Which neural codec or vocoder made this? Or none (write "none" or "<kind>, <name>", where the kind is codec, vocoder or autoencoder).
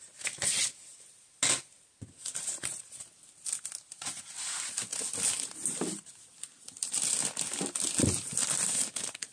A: none